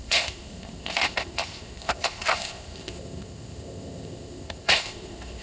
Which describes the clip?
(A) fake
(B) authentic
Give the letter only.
A